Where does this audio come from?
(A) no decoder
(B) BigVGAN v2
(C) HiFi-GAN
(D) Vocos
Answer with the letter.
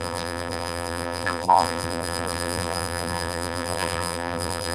B